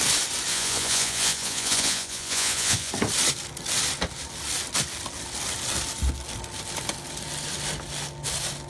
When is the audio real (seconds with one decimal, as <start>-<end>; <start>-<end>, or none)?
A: 0.0-0.5; 2.9-8.7